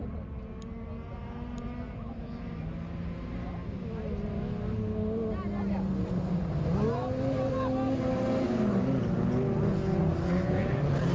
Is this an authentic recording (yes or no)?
yes